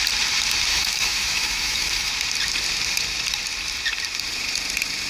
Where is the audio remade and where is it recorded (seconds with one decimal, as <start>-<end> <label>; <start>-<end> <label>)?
0.0-0.7 recorded; 0.7-2.1 remade; 2.1-5.1 recorded